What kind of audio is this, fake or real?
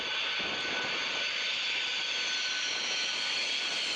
real